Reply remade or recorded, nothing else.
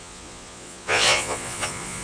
remade